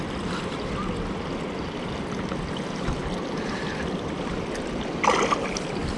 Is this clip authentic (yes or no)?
yes